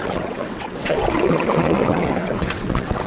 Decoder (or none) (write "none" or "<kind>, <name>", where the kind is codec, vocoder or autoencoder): vocoder, WaveNeXt